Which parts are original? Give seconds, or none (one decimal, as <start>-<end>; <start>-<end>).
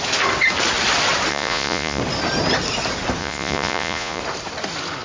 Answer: 0.0-1.3; 2.0-3.2; 4.2-5.0